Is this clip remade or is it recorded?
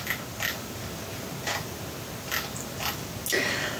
recorded